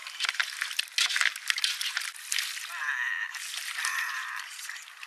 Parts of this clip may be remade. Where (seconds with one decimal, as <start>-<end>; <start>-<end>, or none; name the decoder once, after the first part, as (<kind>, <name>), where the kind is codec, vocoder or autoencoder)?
2.7-5.1 (vocoder, BigVGAN v2)